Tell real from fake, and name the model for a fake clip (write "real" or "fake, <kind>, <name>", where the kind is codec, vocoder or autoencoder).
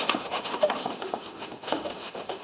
fake, autoencoder, DAC-VAE